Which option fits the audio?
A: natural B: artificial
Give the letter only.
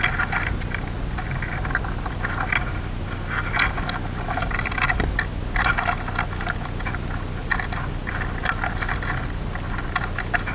A